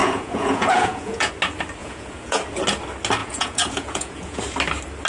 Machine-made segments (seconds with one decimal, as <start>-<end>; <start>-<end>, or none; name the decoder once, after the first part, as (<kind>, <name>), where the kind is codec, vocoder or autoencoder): 0.0-1.3 (vocoder, Vocos); 1.8-2.4; 3.2-4.4